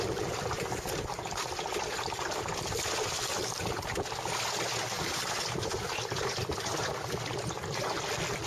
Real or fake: real